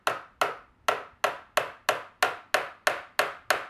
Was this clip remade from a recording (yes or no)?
no